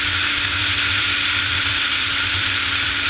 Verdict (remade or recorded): remade